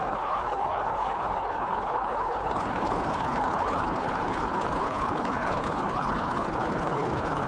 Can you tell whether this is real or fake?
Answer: fake